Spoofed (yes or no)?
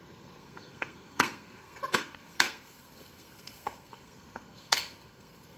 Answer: yes